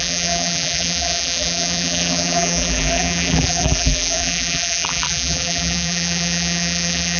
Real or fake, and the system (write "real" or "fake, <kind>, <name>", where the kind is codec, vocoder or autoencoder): fake, vocoder, BigVGAN v2